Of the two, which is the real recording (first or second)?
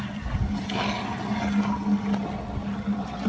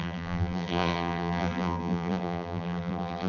first